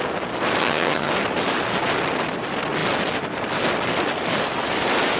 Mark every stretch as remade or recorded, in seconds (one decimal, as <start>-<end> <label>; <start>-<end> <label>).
0.0-0.6 recorded; 0.6-1.1 remade; 1.1-5.2 recorded